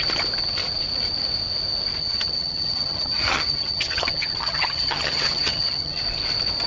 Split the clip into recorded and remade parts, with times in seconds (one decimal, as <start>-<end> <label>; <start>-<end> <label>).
0.0-2.0 recorded; 2.0-6.0 remade; 6.0-6.7 recorded